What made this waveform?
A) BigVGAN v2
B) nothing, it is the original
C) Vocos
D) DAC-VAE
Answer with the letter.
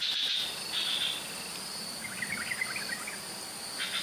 B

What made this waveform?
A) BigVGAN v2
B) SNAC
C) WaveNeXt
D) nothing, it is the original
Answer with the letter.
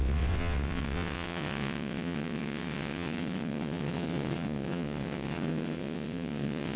C